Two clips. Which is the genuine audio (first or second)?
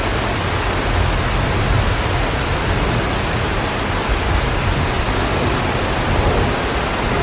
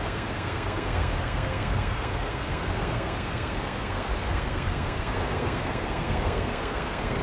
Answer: first